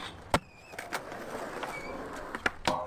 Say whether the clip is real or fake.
real